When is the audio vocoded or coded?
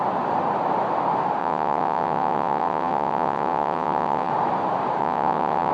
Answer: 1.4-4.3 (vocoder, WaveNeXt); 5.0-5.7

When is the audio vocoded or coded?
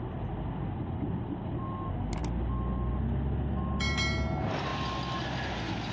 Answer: none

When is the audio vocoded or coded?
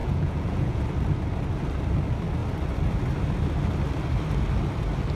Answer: 0.0-0.8 (vocoder, Vocos)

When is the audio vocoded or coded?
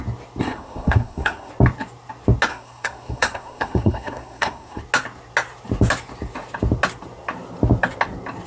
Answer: 0.4-1.5 (codec, SNAC); 2.5-4.8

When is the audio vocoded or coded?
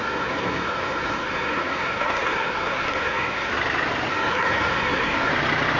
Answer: 0.0-3.5 (codec, SNAC); 4.1-5.3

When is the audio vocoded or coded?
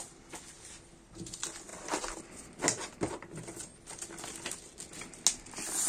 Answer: none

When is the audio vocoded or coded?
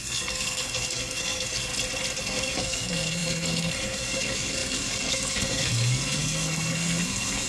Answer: 0.0-1.7 (codec, SNAC); 2.2-7.5